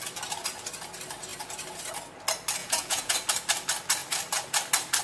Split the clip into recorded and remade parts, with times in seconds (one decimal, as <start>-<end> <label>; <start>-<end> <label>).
0.0-2.6 recorded; 2.6-3.1 remade; 3.1-5.0 recorded